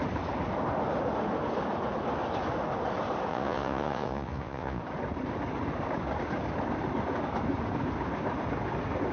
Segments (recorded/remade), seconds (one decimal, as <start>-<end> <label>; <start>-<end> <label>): 0.0-3.3 recorded; 3.3-4.8 remade; 4.8-9.1 recorded